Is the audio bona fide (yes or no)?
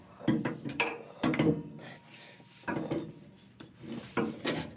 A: yes